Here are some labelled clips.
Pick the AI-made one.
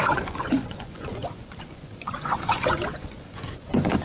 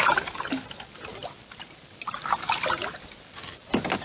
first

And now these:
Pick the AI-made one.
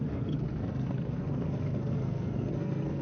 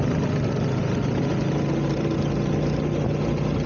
first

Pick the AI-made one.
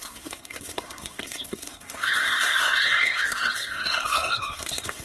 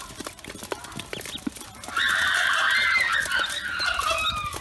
first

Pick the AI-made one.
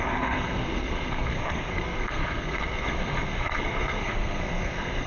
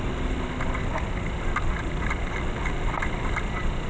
first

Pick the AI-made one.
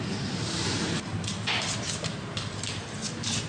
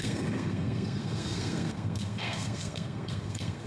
second